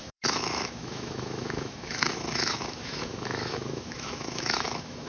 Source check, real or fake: fake